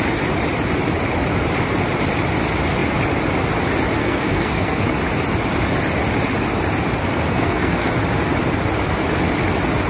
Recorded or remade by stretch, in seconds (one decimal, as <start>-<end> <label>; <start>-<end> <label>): 0.0-4.0 recorded; 4.0-4.9 remade; 4.9-7.0 recorded; 7.0-7.9 remade; 7.9-9.9 recorded